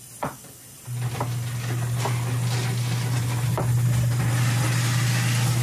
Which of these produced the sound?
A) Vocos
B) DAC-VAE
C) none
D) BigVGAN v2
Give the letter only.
C